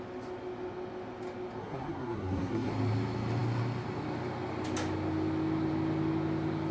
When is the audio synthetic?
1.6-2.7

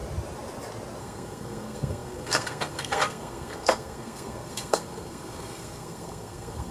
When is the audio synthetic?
1.0-6.7

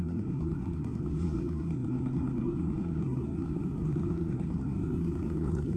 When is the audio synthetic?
0.0-5.8

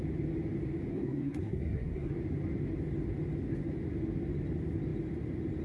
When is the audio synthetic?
0.9-2.1

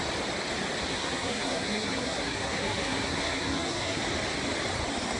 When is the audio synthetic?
0.9-4.0

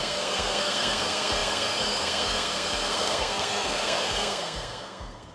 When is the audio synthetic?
0.0-5.3

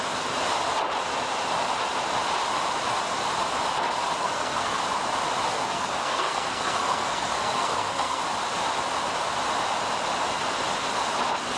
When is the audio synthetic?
4.2-4.8; 5.5-8.2

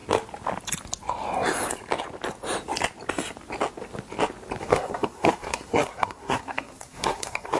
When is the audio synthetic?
4.6-7.6